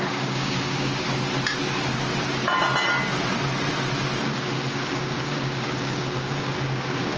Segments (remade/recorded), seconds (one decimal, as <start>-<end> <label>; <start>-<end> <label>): 0.0-1.0 remade; 1.0-4.7 recorded; 4.7-7.2 remade